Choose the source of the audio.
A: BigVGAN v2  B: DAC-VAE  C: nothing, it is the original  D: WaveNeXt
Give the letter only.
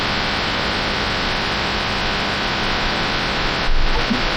C